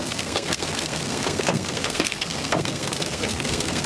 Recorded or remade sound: remade